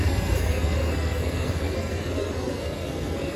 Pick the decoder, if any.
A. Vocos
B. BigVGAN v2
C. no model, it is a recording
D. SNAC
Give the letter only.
D